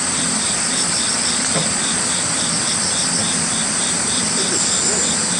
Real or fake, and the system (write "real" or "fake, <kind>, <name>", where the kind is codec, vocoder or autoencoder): fake, vocoder, BigVGAN v2